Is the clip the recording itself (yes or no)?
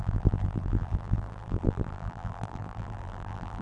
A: no